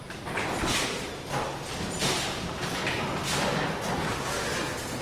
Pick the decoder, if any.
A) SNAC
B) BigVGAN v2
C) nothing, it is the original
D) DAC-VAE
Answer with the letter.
C